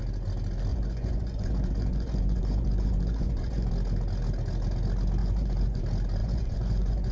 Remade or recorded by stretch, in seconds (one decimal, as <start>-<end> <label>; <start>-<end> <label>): 0.0-0.7 recorded; 0.7-3.7 remade; 3.7-5.2 recorded; 5.2-5.8 remade; 5.8-6.2 recorded; 6.2-7.1 remade